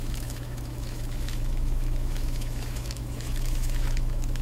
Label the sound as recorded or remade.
remade